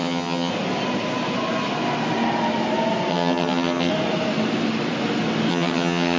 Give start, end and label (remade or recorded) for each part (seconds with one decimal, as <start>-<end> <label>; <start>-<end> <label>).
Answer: 0.0-0.5 remade; 0.5-3.1 recorded; 3.1-3.9 remade; 3.9-5.5 recorded; 5.5-6.2 remade